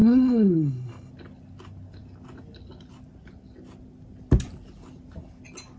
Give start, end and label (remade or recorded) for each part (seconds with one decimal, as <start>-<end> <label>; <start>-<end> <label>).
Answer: 0.0-1.1 remade; 1.1-5.8 recorded